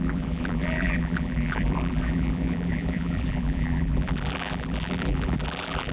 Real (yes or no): no